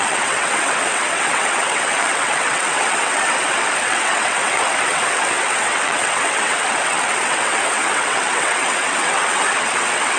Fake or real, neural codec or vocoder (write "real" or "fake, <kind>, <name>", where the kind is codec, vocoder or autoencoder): fake, vocoder, WaveNeXt